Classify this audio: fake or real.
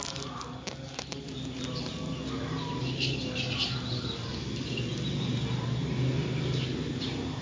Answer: real